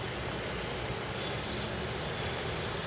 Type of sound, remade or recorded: recorded